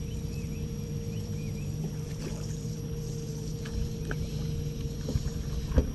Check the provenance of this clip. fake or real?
fake